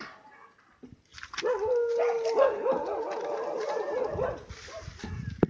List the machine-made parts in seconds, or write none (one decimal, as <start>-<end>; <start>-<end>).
1.1-4.3